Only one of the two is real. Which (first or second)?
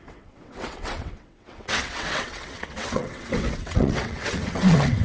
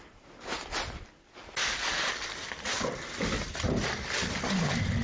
second